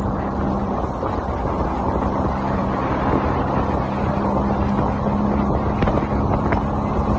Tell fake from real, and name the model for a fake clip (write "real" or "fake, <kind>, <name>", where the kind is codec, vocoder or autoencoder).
real